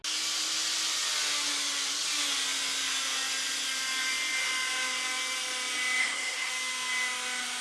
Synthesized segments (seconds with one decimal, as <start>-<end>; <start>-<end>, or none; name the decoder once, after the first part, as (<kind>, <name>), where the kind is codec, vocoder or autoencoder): 6.0-6.5 (codec, SNAC)